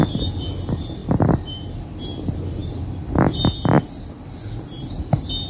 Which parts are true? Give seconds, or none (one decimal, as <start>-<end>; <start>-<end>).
0.0-1.0; 1.9-5.5